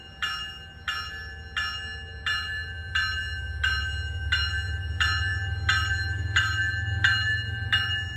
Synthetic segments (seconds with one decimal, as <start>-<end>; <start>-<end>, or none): none